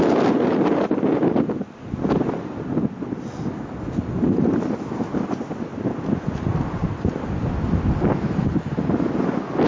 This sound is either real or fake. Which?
real